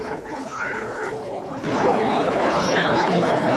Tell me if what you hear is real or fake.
fake